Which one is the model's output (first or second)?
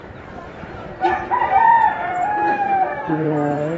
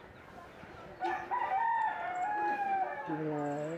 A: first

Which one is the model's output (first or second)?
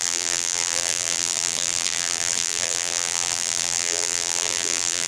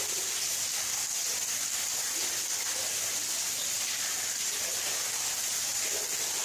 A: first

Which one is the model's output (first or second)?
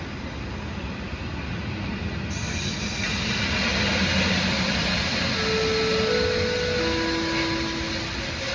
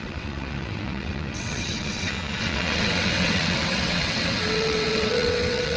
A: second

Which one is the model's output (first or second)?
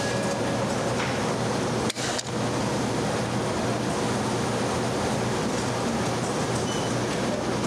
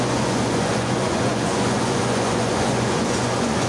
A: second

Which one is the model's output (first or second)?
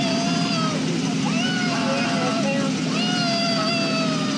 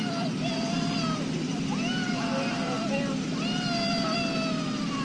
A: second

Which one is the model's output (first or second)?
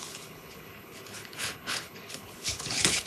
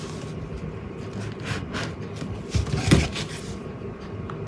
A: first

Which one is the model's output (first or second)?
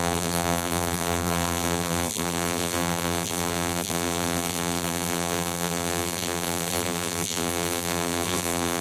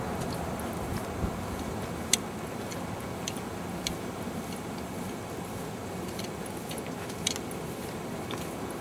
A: first